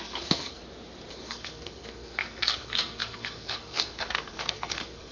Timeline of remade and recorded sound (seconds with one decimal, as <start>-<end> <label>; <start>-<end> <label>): 0.0-0.6 remade; 0.6-1.1 recorded; 1.1-5.1 remade